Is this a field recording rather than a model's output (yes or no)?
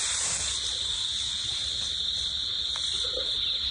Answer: yes